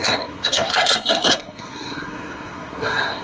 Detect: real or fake fake